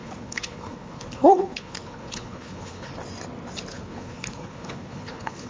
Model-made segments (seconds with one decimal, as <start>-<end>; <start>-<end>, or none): 0.0-2.9; 3.7-5.5